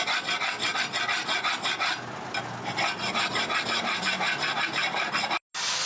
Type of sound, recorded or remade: recorded